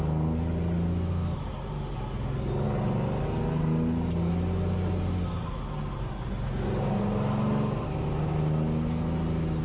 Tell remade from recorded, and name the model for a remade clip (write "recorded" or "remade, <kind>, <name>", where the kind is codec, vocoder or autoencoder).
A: recorded